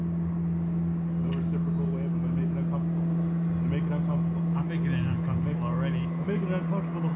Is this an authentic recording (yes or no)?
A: yes